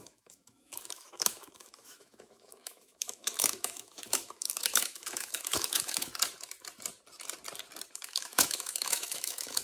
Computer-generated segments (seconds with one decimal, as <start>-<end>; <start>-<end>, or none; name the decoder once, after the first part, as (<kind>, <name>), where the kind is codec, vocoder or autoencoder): 0.0-6.1 (autoencoder, DAC-VAE); 7.9-9.6